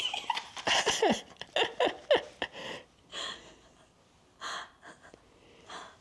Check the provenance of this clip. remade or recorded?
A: recorded